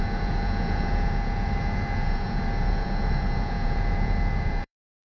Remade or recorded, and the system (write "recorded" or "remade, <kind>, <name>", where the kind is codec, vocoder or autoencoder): remade, vocoder, Vocos